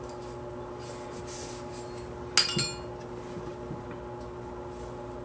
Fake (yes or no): no